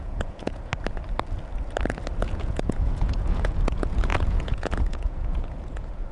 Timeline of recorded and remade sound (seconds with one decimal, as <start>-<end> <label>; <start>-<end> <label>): 0.0-0.7 remade; 0.7-2.2 recorded; 2.2-6.1 remade